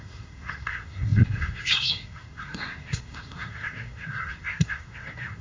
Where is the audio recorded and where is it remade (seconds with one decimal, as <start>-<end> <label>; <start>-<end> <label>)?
0.0-5.4 remade